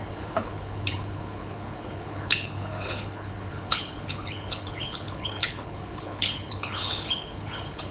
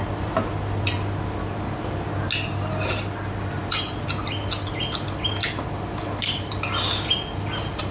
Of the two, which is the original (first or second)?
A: second